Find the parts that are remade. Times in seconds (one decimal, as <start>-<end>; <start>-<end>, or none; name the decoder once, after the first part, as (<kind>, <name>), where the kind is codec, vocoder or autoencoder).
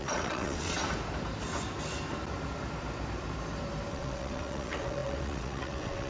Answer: 0.0-0.8 (vocoder, WaveNeXt); 3.9-6.1